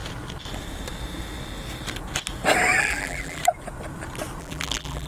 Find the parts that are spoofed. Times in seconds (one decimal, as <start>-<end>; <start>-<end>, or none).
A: 2.8-3.4; 4.4-5.1